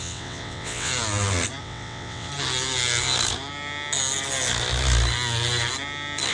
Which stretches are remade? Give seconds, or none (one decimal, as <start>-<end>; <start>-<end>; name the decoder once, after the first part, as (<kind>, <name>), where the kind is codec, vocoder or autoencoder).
0.0-0.9 (vocoder, WaveNeXt); 1.6-2.3